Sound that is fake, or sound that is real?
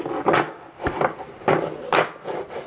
real